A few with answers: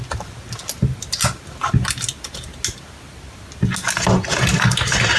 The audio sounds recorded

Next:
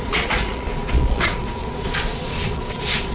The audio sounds remade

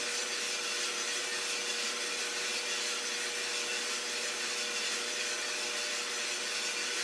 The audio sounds recorded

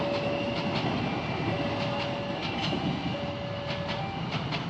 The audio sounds recorded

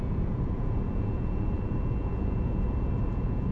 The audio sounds remade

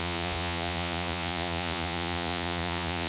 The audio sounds remade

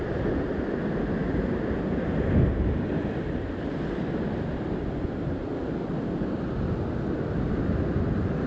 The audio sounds recorded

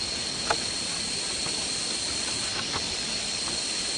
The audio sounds recorded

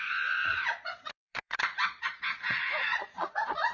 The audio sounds remade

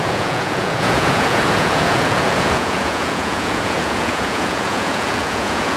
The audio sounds remade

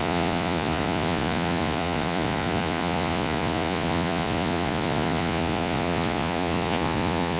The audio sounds remade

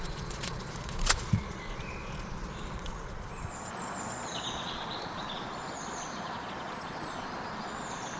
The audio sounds remade